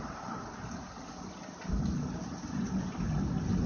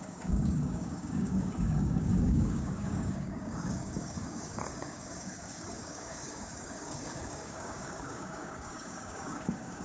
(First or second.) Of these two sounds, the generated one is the second